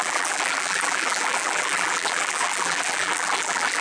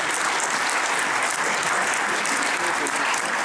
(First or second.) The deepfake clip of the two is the first